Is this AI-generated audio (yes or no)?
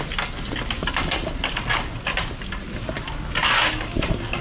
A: no